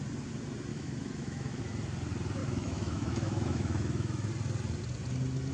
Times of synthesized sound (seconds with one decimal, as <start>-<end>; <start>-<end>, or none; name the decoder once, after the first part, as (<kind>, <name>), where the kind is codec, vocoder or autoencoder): 0.7-1.6 (autoencoder, DAC-VAE); 2.4-4.3